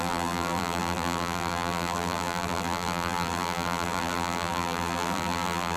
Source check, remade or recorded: remade